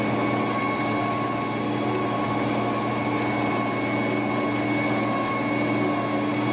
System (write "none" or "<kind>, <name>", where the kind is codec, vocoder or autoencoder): none